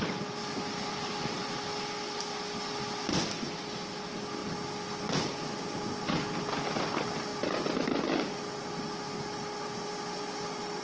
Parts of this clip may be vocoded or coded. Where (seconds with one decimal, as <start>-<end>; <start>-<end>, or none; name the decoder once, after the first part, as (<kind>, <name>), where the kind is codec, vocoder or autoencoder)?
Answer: none